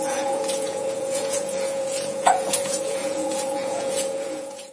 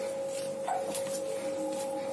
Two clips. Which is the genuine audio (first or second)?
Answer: second